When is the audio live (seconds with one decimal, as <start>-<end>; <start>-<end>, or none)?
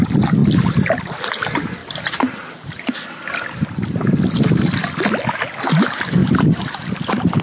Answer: 0.0-1.8; 2.9-6.2